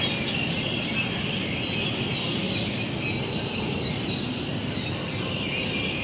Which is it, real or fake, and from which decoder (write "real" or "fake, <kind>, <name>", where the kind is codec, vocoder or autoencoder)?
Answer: real